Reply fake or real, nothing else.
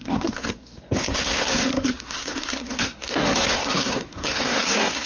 fake